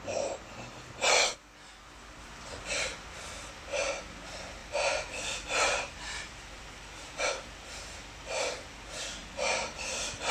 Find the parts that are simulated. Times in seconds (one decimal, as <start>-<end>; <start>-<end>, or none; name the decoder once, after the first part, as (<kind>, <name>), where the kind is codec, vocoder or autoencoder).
none

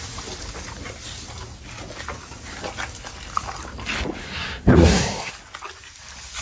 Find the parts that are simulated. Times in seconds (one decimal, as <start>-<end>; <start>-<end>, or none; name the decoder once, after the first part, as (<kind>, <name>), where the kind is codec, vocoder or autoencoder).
4.2-5.3 (codec, SNAC)